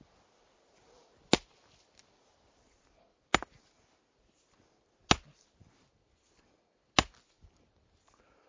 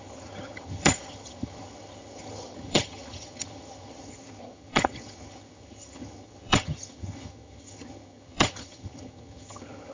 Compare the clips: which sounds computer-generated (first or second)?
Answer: second